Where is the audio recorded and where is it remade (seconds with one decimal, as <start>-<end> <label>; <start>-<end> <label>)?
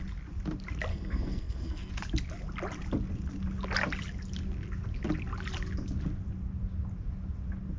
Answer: 0.0-0.9 recorded; 0.9-1.9 remade; 1.9-7.8 recorded